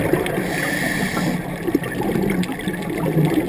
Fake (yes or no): no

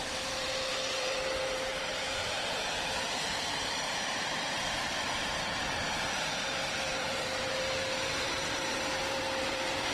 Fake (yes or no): yes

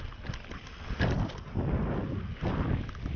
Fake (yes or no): no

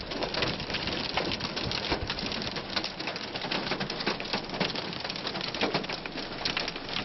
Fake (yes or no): no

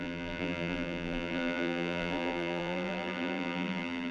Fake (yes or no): yes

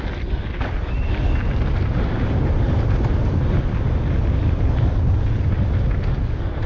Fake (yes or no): no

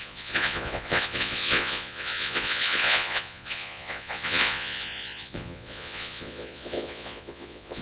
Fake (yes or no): yes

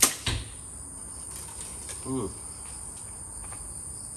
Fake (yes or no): no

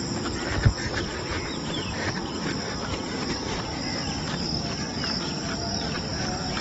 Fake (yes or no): no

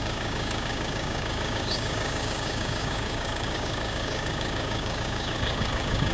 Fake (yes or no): yes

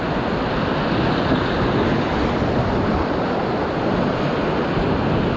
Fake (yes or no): no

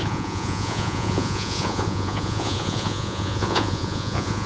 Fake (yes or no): yes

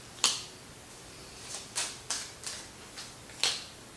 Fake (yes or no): no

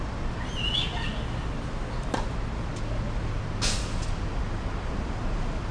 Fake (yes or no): no